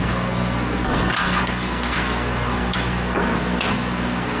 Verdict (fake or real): fake